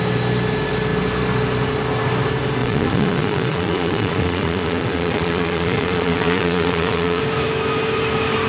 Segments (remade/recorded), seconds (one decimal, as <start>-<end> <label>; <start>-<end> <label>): 0.0-2.6 recorded; 2.6-7.2 remade; 7.2-8.5 recorded